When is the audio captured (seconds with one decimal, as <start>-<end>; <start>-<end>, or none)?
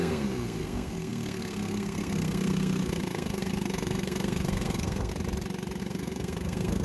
5.1-5.8